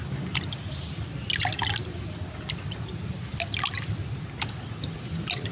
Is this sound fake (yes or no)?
no